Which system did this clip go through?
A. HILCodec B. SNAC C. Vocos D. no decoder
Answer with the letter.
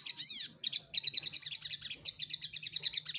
D